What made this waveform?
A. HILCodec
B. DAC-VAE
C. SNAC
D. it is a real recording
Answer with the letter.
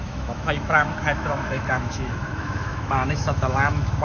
B